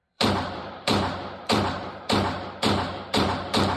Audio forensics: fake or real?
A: fake